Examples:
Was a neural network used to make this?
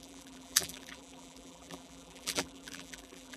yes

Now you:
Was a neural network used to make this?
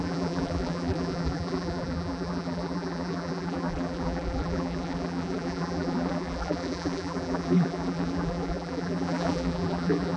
yes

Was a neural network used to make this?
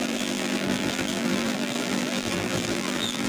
yes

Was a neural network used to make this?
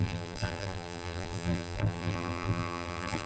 yes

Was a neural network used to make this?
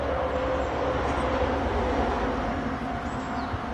no